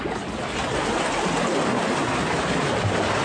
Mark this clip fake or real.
real